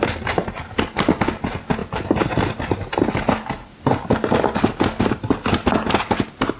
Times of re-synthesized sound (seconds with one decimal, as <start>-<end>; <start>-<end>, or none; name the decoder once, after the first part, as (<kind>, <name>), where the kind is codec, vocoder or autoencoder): none